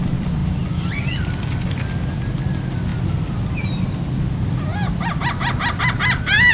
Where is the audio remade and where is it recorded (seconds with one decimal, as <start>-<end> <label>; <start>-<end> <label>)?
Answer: 0.0-6.5 recorded